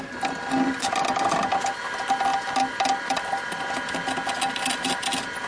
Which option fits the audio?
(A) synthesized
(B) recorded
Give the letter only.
B